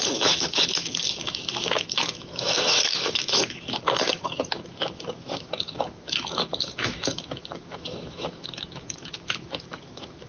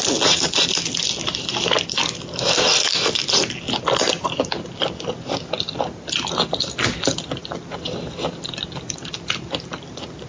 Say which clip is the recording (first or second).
second